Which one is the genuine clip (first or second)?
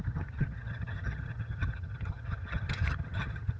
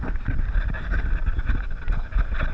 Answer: second